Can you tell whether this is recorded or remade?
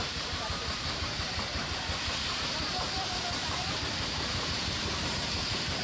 remade